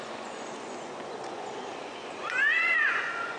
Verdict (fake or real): fake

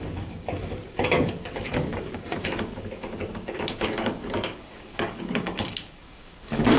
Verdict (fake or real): fake